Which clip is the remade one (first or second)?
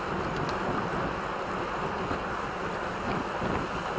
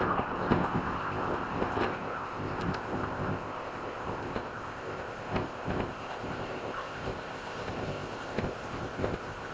second